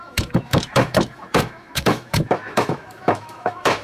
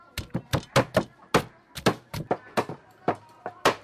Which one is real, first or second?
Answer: second